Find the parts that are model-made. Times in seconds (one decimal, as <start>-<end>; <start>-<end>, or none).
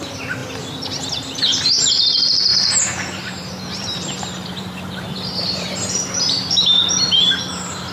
2.5-6.8